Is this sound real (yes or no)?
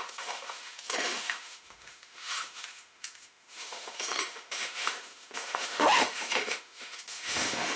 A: no